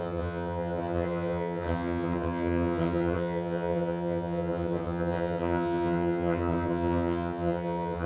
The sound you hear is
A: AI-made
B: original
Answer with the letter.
A